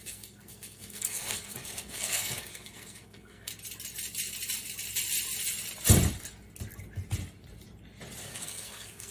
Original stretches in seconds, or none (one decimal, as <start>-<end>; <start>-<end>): 3.5-8.2